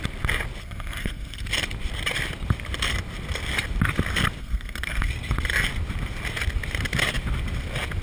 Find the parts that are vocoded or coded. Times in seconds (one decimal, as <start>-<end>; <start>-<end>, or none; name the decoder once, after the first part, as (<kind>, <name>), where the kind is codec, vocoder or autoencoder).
0.6-1.5 (codec, SNAC); 4.4-5.1